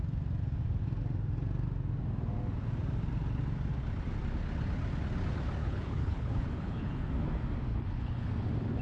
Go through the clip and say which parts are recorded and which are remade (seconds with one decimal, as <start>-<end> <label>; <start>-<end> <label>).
0.0-5.6 recorded; 5.6-7.1 remade; 7.1-7.7 recorded; 7.7-8.3 remade; 8.3-8.8 recorded

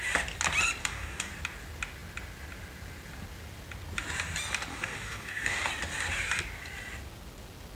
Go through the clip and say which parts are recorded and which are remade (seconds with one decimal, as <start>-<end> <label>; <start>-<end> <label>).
0.0-0.8 recorded; 0.8-1.3 remade; 1.3-4.7 recorded; 4.7-5.7 remade; 5.7-7.8 recorded